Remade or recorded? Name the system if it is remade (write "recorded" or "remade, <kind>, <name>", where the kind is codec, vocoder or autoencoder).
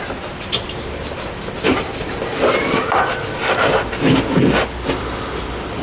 recorded